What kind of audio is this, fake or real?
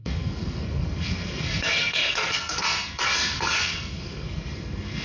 fake